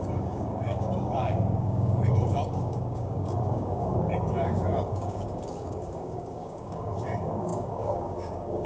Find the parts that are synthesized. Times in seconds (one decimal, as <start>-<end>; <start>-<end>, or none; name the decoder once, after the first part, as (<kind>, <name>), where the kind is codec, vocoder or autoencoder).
0.0-8.7 (codec, DAC)